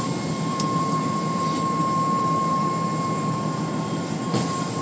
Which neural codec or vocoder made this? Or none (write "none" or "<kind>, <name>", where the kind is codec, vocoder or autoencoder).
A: vocoder, BigVGAN v2